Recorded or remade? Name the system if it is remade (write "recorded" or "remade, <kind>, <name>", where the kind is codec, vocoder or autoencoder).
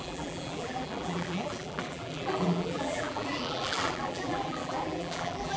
remade, vocoder, BigVGAN v2